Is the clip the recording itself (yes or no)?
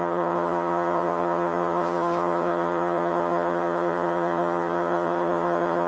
no